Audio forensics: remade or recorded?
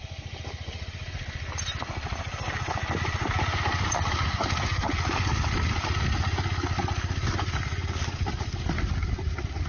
recorded